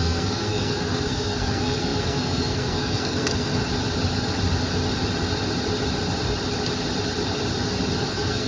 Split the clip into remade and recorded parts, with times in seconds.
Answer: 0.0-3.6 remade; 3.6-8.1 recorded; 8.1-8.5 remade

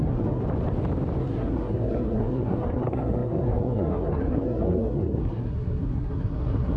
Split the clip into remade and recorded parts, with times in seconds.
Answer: 0.0-0.4 remade; 0.4-1.2 recorded; 1.2-6.8 remade